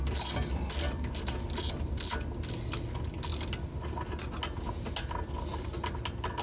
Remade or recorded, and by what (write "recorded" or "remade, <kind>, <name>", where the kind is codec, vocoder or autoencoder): recorded